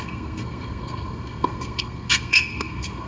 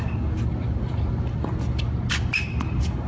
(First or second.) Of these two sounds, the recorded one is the second